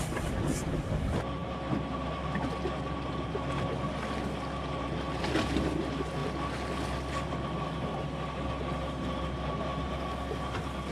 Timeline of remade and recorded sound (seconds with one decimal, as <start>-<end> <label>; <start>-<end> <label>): 0.0-10.9 recorded